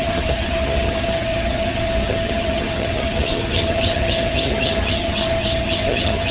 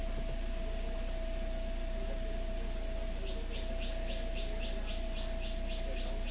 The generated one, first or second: first